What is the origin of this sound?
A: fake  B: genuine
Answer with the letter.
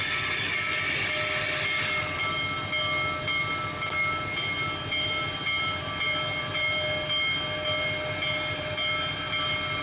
B